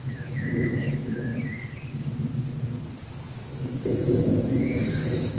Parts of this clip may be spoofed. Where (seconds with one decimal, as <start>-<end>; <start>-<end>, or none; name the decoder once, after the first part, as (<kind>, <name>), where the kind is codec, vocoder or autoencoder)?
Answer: 0.0-1.3 (autoencoder, DAC-VAE); 3.3-5.4